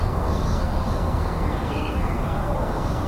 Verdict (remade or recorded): remade